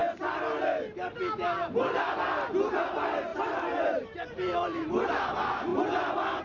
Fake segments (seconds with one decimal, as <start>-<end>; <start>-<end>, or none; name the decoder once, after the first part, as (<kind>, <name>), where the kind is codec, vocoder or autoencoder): 3.3-4.9 (vocoder, BigVGAN v2)